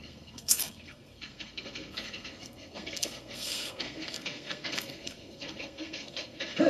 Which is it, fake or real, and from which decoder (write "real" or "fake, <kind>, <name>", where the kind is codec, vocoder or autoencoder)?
fake, codec, SNAC